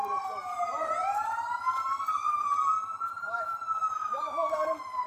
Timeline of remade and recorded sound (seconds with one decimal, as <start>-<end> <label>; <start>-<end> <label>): 0.0-4.0 recorded; 4.0-4.5 remade; 4.5-5.1 recorded